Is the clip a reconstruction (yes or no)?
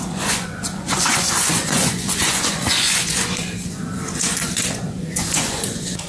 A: yes